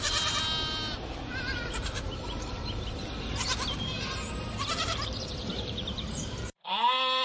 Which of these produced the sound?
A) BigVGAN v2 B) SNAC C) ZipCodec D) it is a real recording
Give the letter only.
A